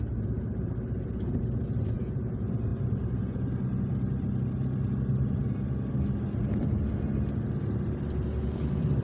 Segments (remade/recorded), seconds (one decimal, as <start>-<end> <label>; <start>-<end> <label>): 0.0-5.4 remade; 5.4-7.6 recorded; 7.6-9.0 remade